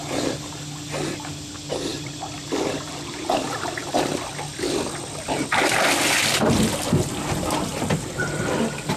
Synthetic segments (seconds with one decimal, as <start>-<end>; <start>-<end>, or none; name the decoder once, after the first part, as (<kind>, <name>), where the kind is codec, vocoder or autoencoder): 1.9-3.1 (vocoder, BigVGAN v2)